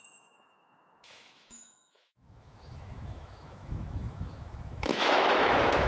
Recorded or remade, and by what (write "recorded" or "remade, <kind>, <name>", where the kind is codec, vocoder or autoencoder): remade, autoencoder, DAC-VAE